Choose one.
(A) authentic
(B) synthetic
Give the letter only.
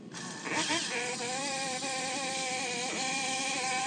B